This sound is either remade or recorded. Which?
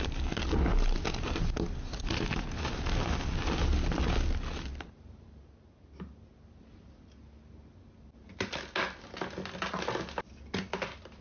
recorded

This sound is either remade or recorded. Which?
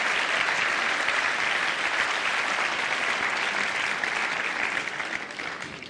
recorded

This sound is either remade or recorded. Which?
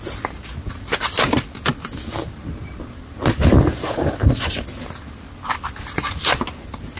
recorded